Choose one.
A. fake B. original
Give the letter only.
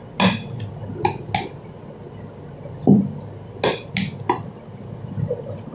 B